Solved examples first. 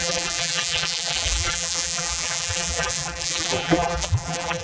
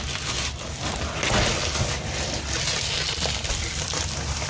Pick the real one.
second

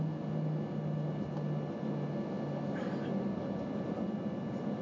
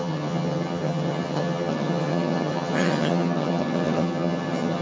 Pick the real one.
first